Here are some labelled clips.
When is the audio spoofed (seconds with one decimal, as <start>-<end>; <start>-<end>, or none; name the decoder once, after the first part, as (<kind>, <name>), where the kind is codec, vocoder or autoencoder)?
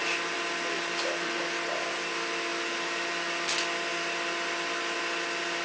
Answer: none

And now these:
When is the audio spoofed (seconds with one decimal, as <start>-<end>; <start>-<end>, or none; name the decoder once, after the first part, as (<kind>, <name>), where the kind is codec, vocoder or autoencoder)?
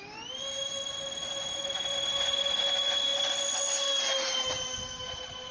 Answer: none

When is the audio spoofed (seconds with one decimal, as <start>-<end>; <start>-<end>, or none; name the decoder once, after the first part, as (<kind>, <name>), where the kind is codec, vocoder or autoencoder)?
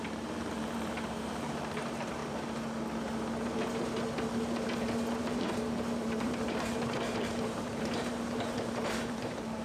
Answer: 0.0-2.2 (vocoder, BigVGAN v2); 5.2-9.6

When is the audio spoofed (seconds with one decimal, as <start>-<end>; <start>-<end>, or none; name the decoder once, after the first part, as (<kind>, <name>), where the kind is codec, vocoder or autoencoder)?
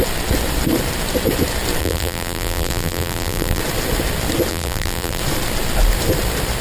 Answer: 1.8-3.6 (vocoder, BigVGAN v2); 4.5-5.2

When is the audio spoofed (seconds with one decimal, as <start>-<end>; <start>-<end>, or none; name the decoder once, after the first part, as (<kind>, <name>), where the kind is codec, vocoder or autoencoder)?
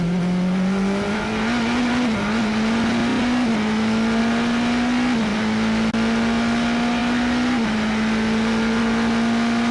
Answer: none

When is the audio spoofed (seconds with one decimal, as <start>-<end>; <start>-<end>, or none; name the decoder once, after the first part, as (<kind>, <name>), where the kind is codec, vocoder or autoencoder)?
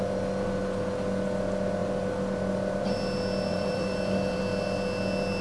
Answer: 3.5-4.4 (vocoder, BigVGAN v2)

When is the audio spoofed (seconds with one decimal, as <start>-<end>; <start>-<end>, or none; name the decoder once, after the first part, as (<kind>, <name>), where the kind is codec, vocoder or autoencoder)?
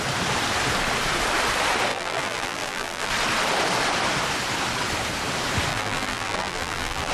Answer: 1.9-3.1 (vocoder, BigVGAN v2); 5.7-7.1